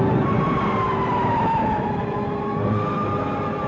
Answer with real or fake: real